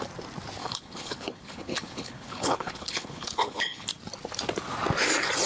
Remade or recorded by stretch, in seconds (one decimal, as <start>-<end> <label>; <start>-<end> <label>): 0.0-0.6 recorded; 0.6-3.9 remade; 3.9-5.5 recorded